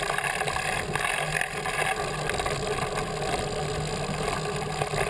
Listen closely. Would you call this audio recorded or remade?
recorded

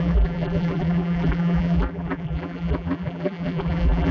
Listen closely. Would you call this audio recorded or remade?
remade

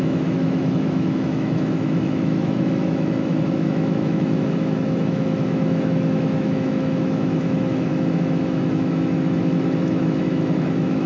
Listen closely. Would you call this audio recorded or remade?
remade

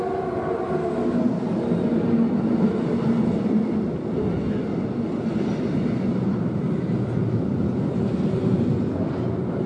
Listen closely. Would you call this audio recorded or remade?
recorded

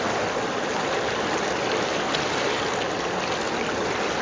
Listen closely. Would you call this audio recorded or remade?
recorded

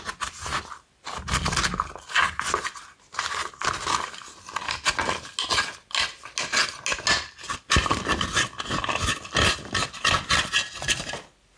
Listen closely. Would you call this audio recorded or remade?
recorded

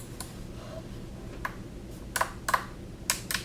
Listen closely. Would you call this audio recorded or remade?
recorded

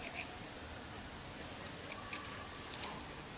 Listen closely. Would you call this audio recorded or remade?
recorded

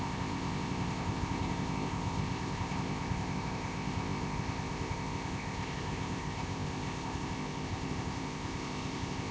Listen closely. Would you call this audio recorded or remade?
remade